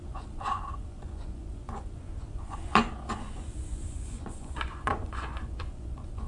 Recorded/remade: remade